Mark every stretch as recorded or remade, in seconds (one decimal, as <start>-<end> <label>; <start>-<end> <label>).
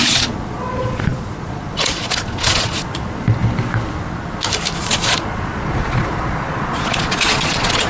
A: 0.0-3.4 remade; 3.4-4.8 recorded; 4.8-7.9 remade